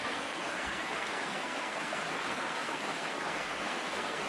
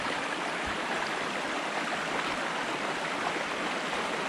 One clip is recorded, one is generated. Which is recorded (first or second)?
second